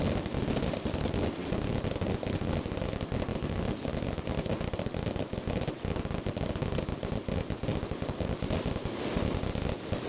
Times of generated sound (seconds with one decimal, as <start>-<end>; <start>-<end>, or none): 3.3-4.2